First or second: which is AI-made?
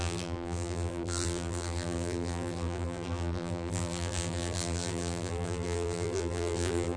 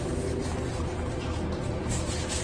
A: first